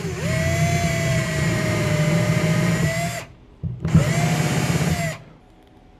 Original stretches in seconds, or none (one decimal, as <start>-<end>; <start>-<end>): 0.0-1.1; 3.8-6.0